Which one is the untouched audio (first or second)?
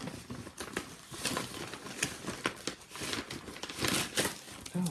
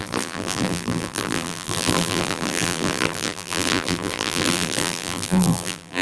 first